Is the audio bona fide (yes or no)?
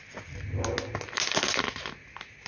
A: yes